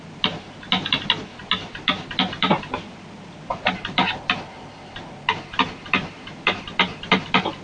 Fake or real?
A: real